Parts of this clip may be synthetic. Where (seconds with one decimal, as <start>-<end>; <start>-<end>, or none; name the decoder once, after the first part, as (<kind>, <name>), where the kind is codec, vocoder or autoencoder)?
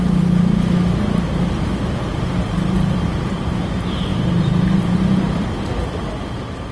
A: 4.1-6.0 (vocoder, BigVGAN v2)